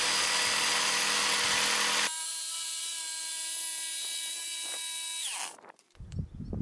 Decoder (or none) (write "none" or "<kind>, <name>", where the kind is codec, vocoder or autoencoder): none